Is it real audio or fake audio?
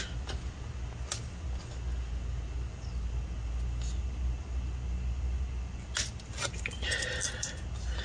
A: real